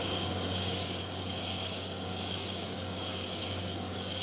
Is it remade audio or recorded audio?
remade